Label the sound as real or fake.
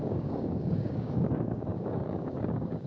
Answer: fake